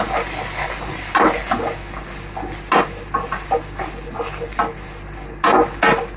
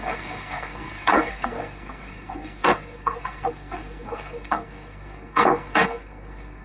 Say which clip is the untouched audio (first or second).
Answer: first